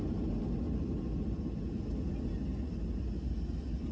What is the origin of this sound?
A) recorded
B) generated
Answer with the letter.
A